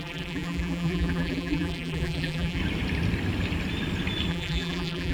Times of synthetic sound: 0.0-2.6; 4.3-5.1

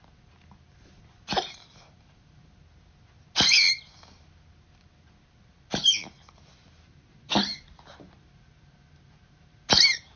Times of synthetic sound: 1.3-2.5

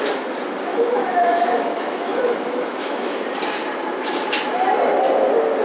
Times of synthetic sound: 0.7-3.2

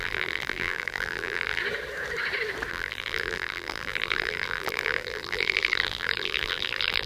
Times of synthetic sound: 0.0-1.6; 2.7-7.1